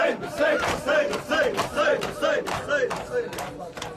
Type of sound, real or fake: fake